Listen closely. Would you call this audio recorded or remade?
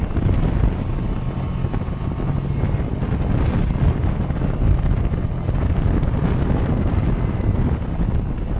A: recorded